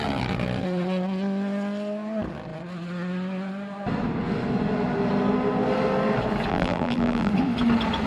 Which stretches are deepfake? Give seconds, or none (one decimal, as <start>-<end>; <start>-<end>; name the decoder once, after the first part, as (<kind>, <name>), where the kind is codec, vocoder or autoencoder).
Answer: 6.5-7.3 (vocoder, BigVGAN v2)

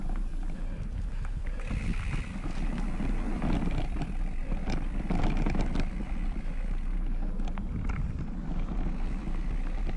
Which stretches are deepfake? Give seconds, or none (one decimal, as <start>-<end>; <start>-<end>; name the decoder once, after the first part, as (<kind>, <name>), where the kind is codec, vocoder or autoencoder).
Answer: none

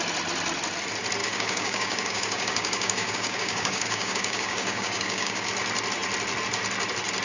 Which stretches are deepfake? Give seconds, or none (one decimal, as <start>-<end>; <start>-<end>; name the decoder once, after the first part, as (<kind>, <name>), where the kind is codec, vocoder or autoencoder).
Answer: 1.2-5.5 (codec, DAC)

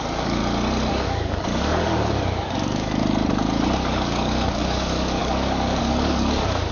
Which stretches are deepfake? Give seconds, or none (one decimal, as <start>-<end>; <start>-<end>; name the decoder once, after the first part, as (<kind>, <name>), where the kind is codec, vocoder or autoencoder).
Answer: 0.0-0.4 (codec, DAC); 0.9-3.0; 4.0-6.7